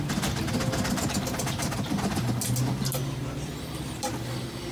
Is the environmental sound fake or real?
real